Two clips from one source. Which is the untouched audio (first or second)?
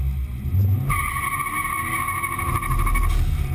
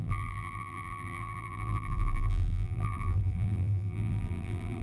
first